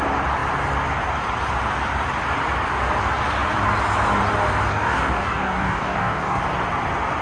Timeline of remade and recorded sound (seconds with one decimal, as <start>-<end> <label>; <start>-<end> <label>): 0.0-4.7 recorded; 4.7-6.4 remade; 6.4-7.2 recorded